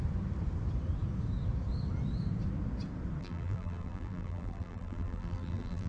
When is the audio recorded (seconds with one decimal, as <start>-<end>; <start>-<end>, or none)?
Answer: 0.0-3.2